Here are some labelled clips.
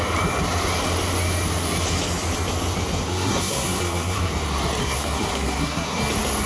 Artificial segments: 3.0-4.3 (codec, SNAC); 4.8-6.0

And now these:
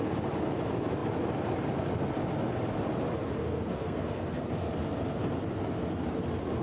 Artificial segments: 3.4-4.7 (codec, SNAC)

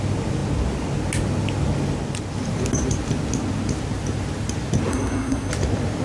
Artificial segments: 4.9-5.5 (codec, SNAC)

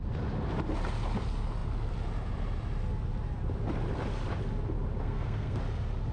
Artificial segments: 5.0-5.6 (codec, SNAC)

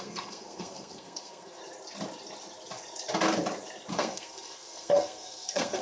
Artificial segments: 0.0-1.6 (codec, SNAC); 3.9-5.8